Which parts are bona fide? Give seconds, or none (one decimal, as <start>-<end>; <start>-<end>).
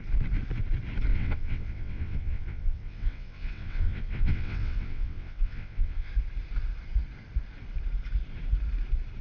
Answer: 0.0-1.1; 6.1-9.2